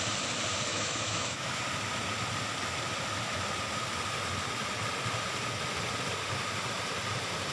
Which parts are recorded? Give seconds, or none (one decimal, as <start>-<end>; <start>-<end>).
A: 0.0-0.7; 1.6-7.5